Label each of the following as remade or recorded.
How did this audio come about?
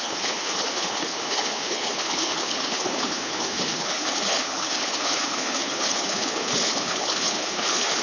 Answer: remade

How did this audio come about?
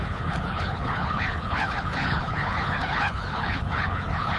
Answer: remade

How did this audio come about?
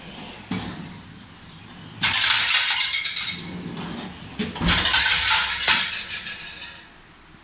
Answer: recorded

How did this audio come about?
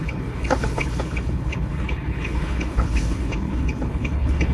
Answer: remade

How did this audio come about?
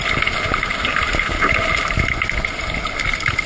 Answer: recorded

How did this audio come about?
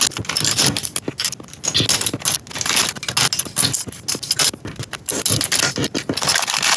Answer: recorded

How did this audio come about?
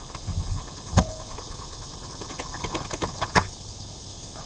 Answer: remade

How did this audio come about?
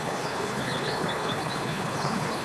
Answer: remade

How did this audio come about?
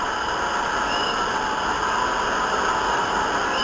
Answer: recorded